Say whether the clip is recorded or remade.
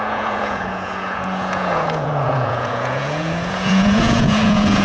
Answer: remade